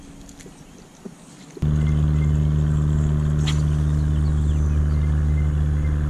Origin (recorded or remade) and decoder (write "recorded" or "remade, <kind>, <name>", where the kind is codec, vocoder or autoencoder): recorded